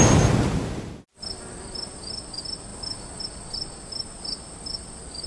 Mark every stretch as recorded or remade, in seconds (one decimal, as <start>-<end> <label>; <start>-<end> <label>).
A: 0.0-5.3 recorded